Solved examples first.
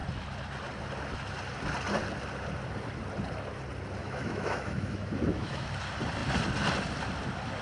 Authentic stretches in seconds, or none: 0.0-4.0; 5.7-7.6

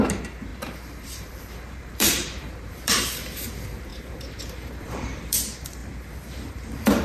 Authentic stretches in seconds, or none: none

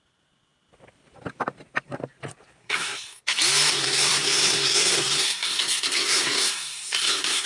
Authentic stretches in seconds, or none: 0.0-2.6; 3.2-3.7

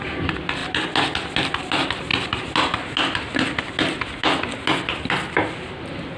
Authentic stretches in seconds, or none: 0.0-6.2